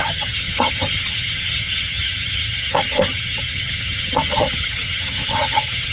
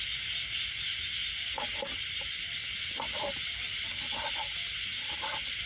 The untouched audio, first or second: second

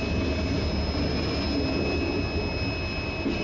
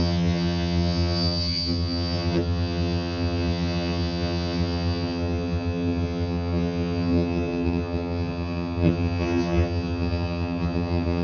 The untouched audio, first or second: first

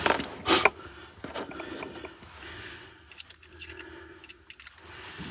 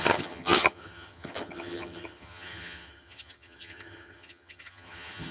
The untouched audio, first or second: first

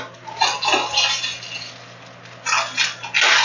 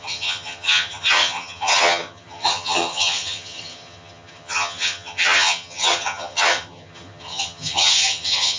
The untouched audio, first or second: first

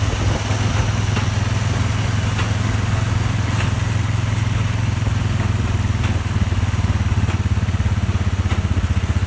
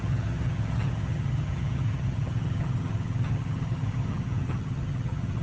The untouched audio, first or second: first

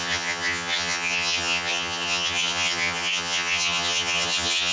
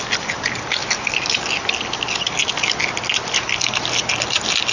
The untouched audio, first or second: second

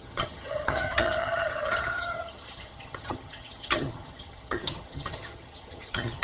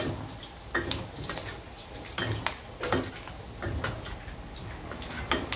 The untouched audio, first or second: second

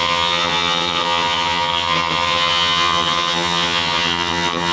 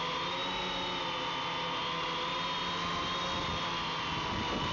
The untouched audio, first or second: second